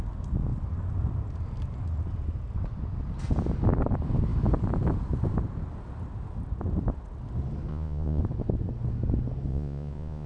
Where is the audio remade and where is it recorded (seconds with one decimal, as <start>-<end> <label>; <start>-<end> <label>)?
0.0-7.7 recorded; 7.7-8.2 remade; 8.2-9.5 recorded; 9.5-10.3 remade